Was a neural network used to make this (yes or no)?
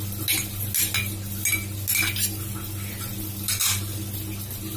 no